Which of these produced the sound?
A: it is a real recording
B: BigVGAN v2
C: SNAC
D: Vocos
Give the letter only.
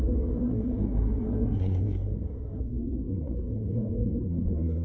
C